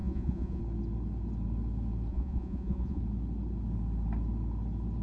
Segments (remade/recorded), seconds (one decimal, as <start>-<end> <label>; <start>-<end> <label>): 0.0-0.6 remade; 0.6-2.1 recorded; 2.1-3.0 remade; 3.0-5.0 recorded

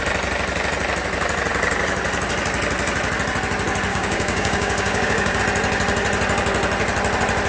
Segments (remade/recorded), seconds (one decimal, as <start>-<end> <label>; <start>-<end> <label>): 0.0-3.9 recorded; 3.9-5.4 remade; 5.4-7.5 recorded

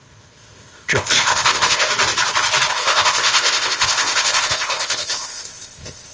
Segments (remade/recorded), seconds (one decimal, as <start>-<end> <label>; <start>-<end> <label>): 0.0-1.9 remade; 1.9-2.7 recorded; 2.7-6.1 remade

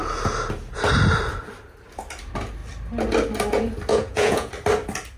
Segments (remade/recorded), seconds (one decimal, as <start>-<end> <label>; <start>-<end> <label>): 0.0-3.9 recorded; 3.9-4.5 remade; 4.5-5.2 recorded

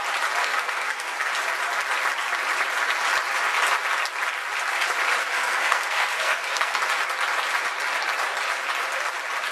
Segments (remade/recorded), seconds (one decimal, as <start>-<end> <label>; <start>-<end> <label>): 0.0-0.4 recorded; 0.4-1.3 remade; 1.3-5.2 recorded; 5.2-6.8 remade; 6.8-9.5 recorded